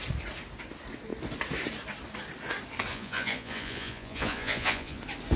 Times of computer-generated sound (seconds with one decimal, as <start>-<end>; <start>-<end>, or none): 2.9-5.0